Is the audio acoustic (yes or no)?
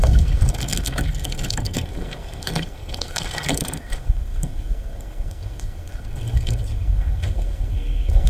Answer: no